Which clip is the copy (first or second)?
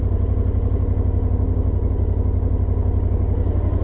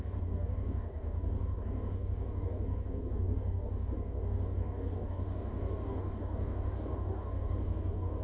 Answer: second